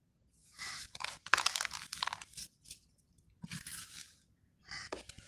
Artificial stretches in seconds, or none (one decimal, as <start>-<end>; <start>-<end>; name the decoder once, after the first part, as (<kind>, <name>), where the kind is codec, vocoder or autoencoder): 0.4-1.7 (autoencoder, DAC-VAE); 3.7-4.6